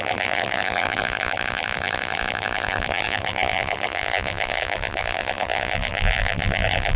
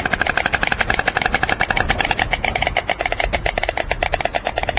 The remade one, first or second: first